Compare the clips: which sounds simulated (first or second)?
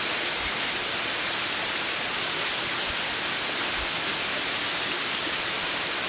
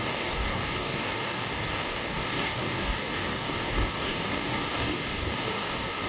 second